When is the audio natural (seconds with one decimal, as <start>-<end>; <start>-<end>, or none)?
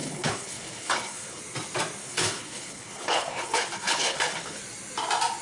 1.4-2.0; 4.6-5.4